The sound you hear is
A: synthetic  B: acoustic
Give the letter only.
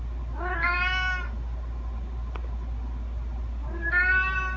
B